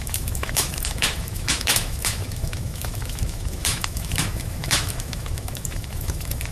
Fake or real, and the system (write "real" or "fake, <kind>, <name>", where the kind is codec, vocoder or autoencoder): fake, autoencoder, DAC-VAE